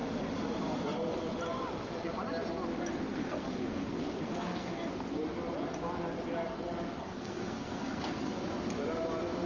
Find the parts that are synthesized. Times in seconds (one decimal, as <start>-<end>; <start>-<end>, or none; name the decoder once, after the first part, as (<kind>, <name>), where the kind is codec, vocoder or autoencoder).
3.1-4.9 (codec, SNAC); 7.0-8.4